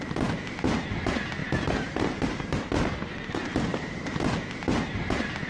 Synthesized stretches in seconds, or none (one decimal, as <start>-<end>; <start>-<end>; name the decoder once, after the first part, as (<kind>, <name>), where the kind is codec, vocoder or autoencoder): 1.4-2.6 (vocoder, BigVGAN v2); 3.7-4.2